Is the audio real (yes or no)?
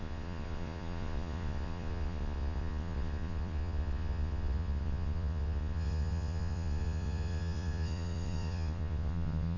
no